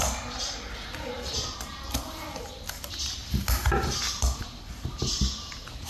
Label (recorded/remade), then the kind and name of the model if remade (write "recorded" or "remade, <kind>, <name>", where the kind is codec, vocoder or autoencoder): recorded